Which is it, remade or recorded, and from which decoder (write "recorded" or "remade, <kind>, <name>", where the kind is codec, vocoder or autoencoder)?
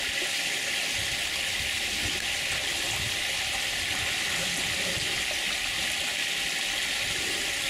recorded